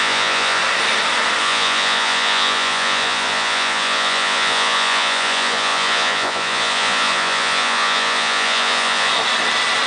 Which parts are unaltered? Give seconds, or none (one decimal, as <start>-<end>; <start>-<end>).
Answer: 0.6-1.4; 9.1-9.9